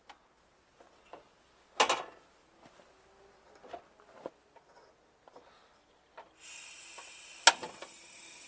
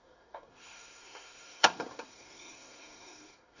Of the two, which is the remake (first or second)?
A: second